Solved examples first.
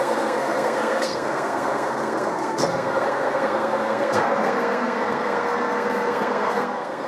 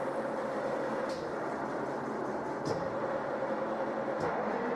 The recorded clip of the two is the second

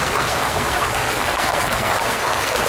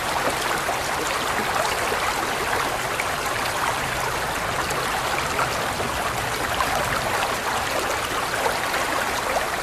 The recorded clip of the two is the second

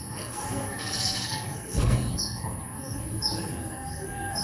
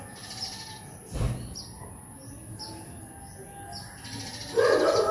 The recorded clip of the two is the second